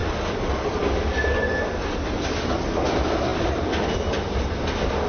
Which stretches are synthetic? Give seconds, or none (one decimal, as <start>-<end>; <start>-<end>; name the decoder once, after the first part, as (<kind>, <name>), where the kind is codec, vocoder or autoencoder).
none